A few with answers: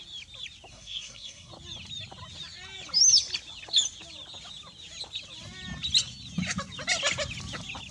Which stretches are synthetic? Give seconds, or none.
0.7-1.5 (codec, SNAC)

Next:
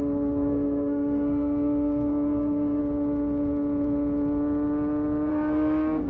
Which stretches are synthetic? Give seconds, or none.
0.0-2.8 (codec, SNAC); 5.3-6.1

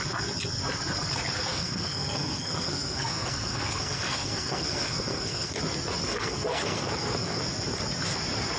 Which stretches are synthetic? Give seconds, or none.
1.5-5.6 (codec, SNAC); 6.0-7.4